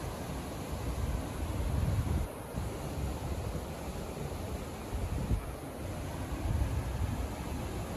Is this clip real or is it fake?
real